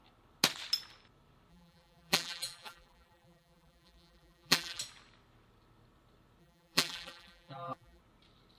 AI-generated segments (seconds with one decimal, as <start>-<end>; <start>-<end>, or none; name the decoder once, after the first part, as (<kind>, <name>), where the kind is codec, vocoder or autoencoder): 1.5-4.8 (vocoder, BigVGAN v2); 6.4-8.0